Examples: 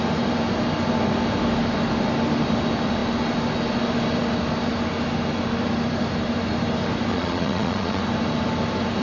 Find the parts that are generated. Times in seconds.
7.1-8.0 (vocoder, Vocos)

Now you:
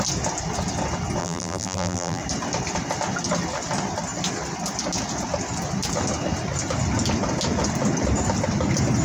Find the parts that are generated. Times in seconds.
1.2-2.2 (vocoder, BigVGAN v2)